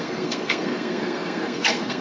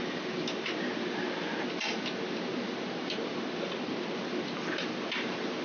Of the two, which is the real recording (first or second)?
second